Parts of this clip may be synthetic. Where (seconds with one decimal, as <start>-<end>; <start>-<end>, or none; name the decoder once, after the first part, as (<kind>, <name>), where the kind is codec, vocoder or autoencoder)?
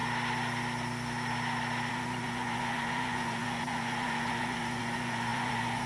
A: 1.9-5.9 (vocoder, Vocos)